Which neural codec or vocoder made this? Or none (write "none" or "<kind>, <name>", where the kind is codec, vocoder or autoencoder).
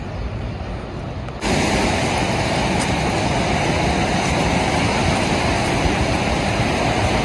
none